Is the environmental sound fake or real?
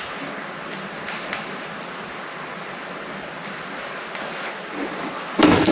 real